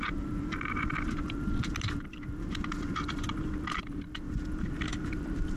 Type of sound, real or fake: fake